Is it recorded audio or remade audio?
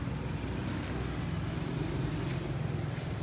recorded